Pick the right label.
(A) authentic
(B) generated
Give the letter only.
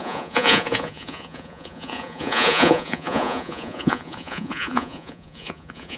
B